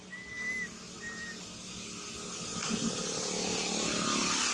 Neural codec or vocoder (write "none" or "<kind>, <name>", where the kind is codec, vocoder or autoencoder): none